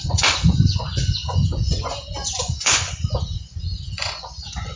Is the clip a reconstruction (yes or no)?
yes